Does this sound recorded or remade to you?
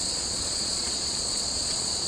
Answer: remade